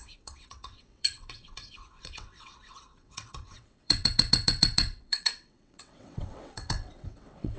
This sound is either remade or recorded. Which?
remade